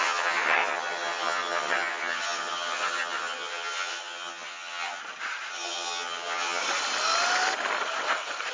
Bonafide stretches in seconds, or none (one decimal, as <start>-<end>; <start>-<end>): 5.0-5.5; 6.6-8.5